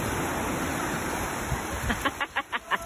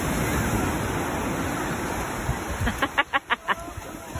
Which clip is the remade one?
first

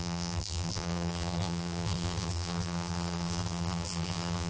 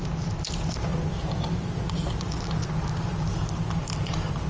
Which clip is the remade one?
first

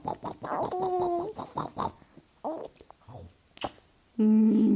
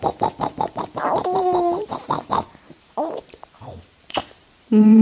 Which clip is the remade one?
second